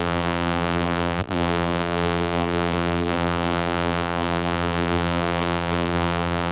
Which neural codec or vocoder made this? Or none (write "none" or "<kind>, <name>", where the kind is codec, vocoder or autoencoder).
vocoder, BigVGAN v2